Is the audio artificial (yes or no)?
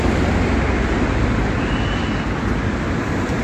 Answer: no